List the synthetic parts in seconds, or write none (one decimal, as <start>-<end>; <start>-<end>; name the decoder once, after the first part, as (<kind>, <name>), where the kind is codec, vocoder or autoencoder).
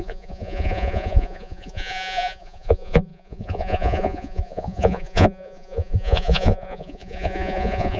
0.0-8.0 (vocoder, Vocos)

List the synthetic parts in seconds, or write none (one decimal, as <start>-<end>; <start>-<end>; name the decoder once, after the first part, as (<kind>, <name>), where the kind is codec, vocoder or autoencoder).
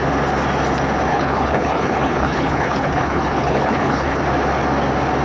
1.1-4.2 (codec, HILCodec)